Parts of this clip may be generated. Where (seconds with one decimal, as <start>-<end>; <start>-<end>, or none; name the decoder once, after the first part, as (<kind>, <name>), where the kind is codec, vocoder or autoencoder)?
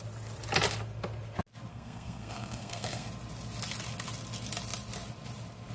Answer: 1.7-3.1 (codec, SNAC)